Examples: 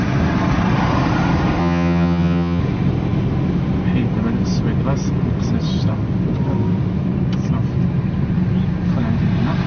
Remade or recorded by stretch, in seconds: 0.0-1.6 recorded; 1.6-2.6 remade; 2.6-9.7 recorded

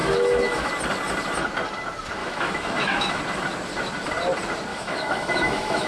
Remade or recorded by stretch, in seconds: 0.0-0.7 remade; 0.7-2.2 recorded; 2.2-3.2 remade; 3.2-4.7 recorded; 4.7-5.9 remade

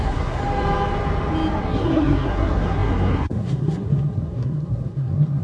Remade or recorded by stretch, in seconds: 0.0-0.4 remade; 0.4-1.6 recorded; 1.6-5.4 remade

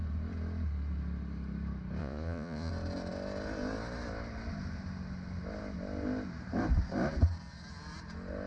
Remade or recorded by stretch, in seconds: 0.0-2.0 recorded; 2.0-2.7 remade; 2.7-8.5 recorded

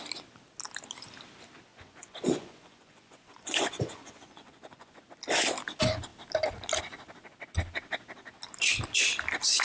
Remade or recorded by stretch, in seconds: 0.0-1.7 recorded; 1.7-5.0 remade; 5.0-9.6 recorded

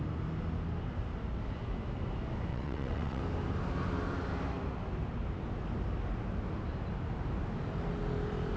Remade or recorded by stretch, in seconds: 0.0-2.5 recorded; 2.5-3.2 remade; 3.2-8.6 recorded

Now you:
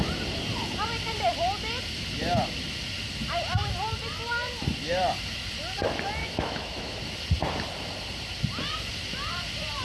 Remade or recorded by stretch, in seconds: 0.0-6.2 recorded; 6.2-7.0 remade; 7.0-9.8 recorded

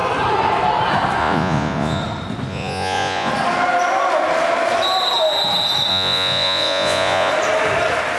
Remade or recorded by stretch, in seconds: 0.0-1.2 recorded; 1.2-2.0 remade; 2.0-2.5 recorded; 2.5-3.3 remade; 3.3-5.9 recorded; 5.9-7.3 remade; 7.3-8.2 recorded